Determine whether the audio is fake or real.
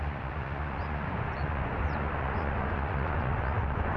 fake